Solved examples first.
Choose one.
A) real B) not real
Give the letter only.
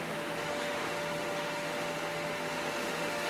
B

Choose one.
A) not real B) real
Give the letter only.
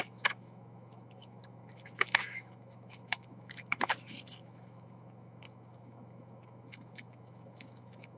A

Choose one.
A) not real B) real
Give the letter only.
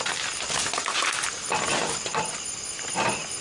A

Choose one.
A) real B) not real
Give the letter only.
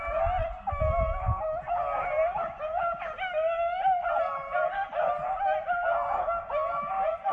A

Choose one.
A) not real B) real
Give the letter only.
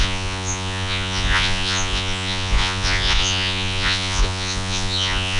A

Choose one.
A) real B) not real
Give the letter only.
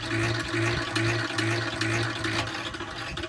A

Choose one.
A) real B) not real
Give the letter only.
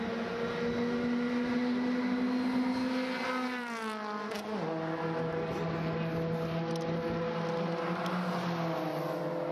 A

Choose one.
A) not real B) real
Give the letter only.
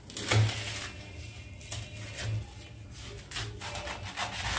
B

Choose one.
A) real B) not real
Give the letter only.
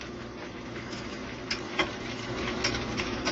B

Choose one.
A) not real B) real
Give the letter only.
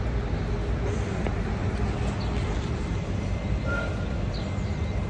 B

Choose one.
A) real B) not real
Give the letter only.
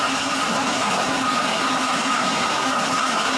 B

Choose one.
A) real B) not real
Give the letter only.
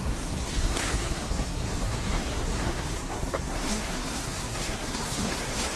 B